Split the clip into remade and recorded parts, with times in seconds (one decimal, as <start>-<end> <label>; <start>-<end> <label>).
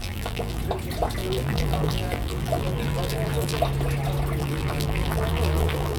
0.0-0.6 remade; 0.6-1.2 recorded; 1.2-3.6 remade; 3.6-4.4 recorded; 4.4-6.0 remade